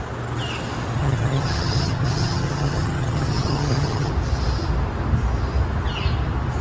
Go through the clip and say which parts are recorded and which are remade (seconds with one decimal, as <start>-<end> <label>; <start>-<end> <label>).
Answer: 0.0-1.0 recorded; 1.0-4.1 remade; 4.1-6.6 recorded